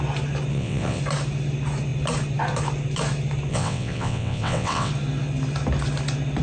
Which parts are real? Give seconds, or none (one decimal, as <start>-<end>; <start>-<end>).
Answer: 0.0-0.5; 1.0-3.5; 4.9-6.4